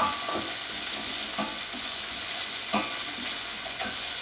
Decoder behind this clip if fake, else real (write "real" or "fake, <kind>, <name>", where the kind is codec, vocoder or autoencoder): fake, vocoder, Vocos